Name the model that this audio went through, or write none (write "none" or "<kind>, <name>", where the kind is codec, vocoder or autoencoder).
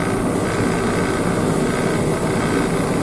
none